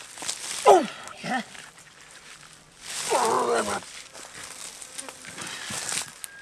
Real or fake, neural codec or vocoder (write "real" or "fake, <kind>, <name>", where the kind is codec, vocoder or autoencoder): real